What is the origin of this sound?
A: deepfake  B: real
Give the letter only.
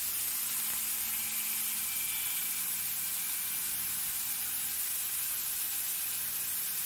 B